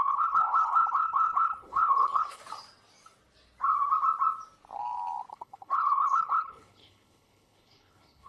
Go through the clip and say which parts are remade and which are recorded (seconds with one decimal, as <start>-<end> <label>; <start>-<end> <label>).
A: 0.0-2.4 remade; 2.4-5.3 recorded; 5.3-8.3 remade